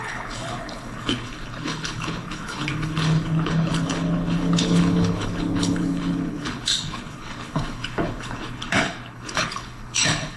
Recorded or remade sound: remade